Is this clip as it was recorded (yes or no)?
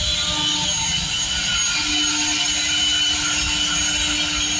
yes